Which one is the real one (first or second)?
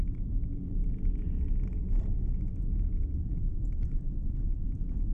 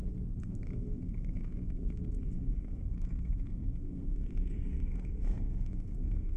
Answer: first